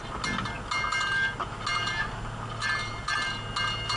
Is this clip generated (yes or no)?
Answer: no